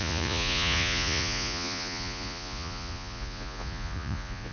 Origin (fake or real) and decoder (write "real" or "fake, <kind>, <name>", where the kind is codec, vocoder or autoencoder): fake, vocoder, Vocos